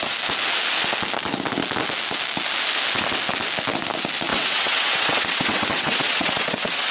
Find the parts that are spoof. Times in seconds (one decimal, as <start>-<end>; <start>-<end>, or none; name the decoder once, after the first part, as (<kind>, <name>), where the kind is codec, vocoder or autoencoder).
4.3-6.9 (vocoder, WaveNeXt)